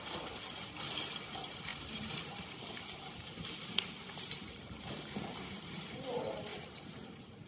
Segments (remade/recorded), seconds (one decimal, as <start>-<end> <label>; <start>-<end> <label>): 0.0-1.7 recorded; 1.7-2.3 remade; 2.3-6.5 recorded; 6.5-7.5 remade